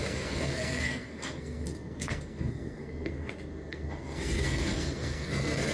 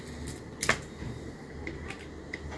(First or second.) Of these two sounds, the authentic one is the second